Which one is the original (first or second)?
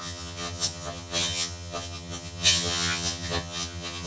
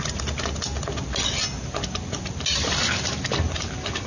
second